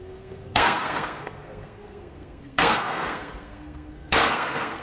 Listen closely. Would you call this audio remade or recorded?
remade